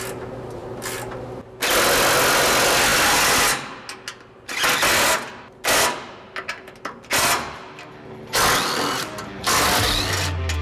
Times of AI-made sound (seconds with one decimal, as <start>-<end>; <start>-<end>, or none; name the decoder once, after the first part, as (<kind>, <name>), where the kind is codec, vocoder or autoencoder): none